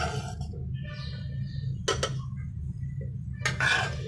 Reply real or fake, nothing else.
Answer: real